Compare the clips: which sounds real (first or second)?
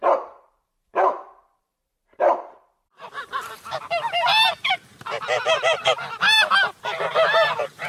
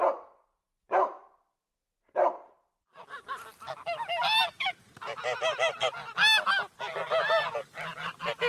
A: second